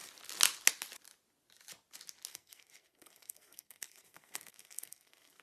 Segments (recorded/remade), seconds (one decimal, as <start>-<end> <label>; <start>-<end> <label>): 0.0-2.3 recorded; 2.3-5.4 remade